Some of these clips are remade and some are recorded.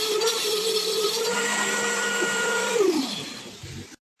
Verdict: remade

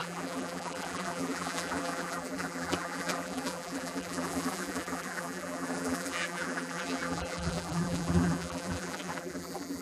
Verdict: remade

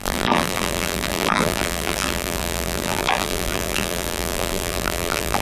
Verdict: remade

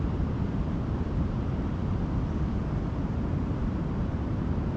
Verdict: remade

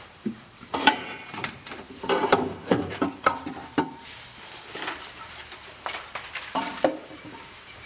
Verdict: remade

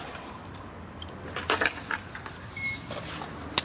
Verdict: recorded